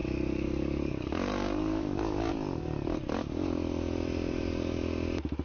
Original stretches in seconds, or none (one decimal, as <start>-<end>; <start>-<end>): 2.3-5.4